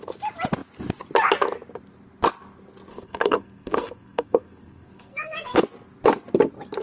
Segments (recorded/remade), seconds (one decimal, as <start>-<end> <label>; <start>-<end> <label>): 0.0-2.9 recorded; 2.9-5.6 remade; 5.6-6.8 recorded